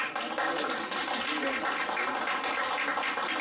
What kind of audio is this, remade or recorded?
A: recorded